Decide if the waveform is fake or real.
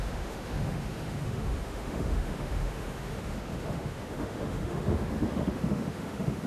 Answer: fake